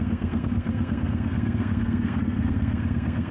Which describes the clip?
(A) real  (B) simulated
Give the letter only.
B